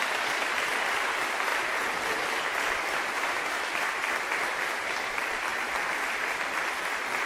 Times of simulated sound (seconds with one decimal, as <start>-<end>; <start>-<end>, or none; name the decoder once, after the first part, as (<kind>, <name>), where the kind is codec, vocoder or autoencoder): 0.0-1.5 (vocoder, BigVGAN v2); 2.2-5.5; 6.1-7.3